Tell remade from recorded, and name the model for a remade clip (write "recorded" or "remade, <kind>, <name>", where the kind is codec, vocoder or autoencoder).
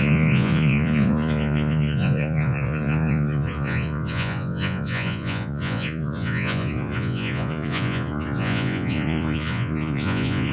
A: remade, vocoder, Vocos